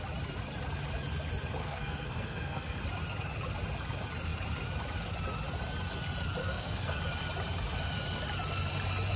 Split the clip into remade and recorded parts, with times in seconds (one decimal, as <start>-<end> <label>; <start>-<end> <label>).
0.0-1.6 recorded; 1.6-2.8 remade; 2.8-6.4 recorded; 6.4-7.0 remade; 7.0-9.2 recorded